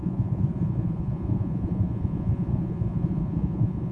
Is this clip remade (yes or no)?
yes